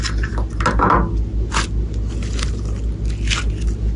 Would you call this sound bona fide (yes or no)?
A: yes